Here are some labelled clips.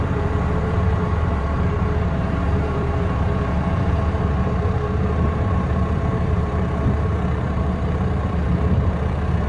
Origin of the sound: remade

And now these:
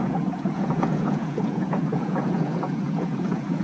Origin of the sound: remade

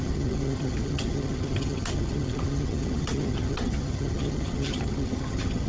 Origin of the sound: remade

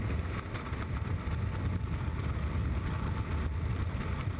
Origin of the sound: recorded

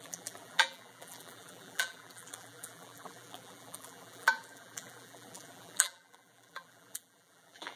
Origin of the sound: remade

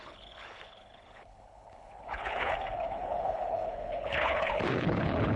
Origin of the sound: remade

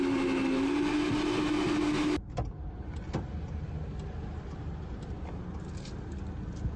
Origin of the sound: recorded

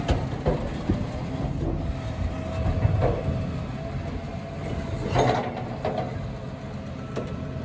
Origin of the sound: recorded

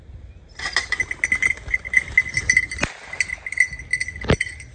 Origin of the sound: recorded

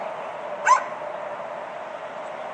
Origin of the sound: recorded